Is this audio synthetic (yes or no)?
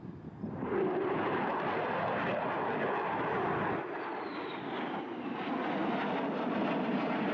no